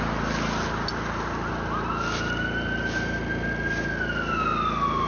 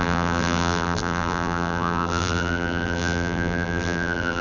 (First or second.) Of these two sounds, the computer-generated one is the second